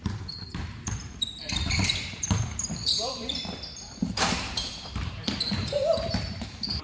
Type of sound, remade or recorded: remade